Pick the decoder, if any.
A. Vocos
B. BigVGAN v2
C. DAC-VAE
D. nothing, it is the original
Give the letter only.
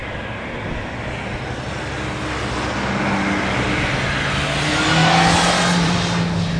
D